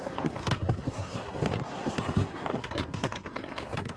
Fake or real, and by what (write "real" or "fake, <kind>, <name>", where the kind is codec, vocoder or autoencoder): fake, codec, SNAC